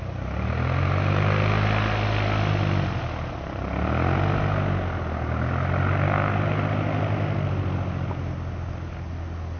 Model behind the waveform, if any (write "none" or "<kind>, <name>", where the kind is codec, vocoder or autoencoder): none